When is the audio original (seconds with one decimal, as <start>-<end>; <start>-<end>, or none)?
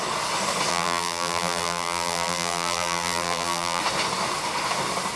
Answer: 0.0-0.7; 3.8-5.2